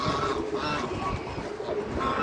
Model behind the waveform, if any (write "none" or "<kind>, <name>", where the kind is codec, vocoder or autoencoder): none